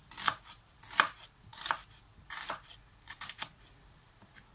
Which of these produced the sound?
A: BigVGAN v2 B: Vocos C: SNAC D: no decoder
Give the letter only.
D